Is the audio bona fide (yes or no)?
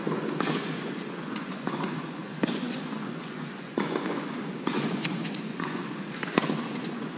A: no